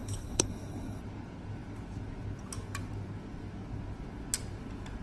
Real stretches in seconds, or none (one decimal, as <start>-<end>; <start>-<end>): 1.0-5.0